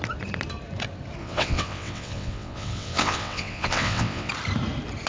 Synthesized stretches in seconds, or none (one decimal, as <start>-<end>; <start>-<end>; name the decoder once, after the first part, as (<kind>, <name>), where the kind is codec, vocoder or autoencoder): 1.2-4.3 (vocoder, WaveNeXt)